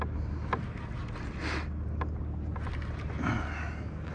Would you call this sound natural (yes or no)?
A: yes